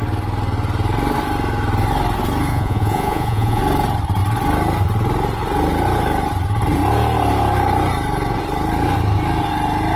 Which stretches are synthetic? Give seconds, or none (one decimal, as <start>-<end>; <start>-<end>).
2.5-3.6